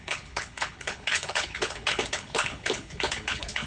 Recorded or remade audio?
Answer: remade